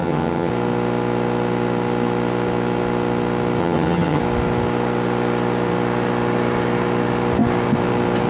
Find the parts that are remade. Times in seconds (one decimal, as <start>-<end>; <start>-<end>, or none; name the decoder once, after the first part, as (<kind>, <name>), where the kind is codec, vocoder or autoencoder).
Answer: 0.0-0.5 (vocoder, HiFi-GAN); 3.6-4.2